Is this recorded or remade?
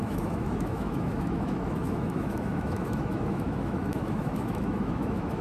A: remade